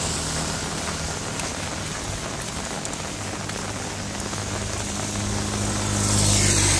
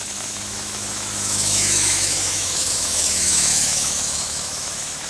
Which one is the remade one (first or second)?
second